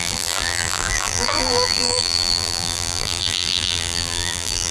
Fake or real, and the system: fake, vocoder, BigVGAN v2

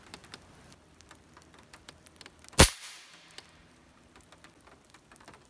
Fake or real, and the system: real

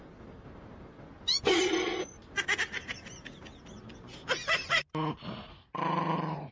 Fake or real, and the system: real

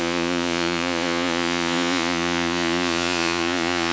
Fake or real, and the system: fake, vocoder, Vocos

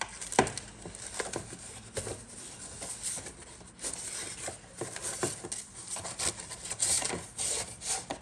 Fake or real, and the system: real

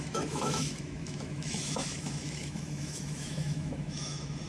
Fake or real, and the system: fake, autoencoder, DAC-VAE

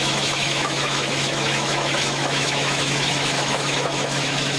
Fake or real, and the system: fake, autoencoder, DAC-VAE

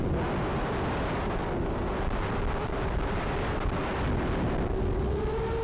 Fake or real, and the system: real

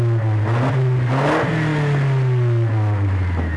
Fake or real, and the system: real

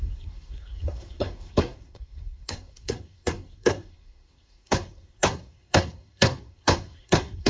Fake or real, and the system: fake, codec, SNAC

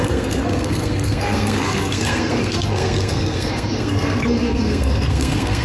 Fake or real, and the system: fake, codec, SNAC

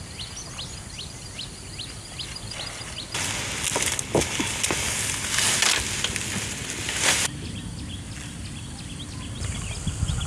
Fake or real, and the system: real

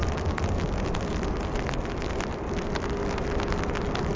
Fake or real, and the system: real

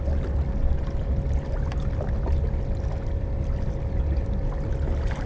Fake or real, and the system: real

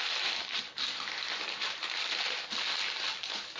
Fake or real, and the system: real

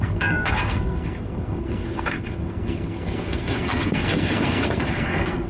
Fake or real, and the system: fake, codec, SNAC